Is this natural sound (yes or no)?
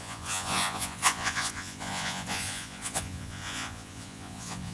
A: no